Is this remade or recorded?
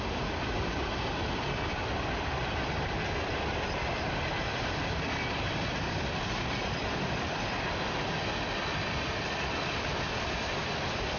remade